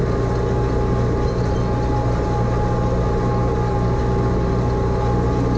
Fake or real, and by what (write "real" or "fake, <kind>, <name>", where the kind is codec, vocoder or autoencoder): real